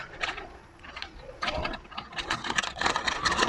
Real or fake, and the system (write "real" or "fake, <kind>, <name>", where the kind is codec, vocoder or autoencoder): fake, vocoder, Vocos